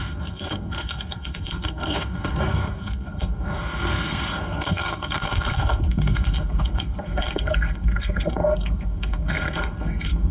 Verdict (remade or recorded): remade